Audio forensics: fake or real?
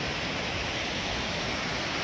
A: real